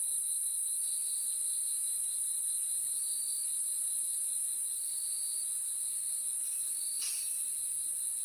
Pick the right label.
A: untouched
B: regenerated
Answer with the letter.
A